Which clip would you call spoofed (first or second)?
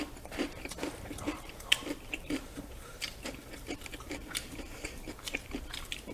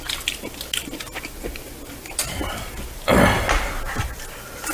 first